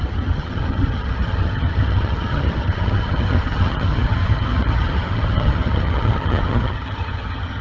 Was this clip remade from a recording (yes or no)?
yes